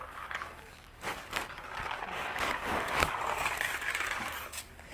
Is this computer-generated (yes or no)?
yes